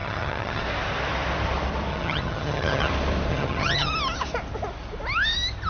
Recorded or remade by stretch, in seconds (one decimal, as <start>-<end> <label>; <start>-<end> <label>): 0.0-0.6 remade; 0.6-1.9 recorded; 1.9-2.9 remade; 2.9-3.3 recorded; 3.3-3.9 remade; 3.9-5.7 recorded